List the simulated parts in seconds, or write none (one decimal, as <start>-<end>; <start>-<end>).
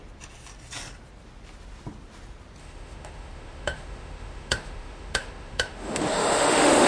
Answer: 2.6-6.9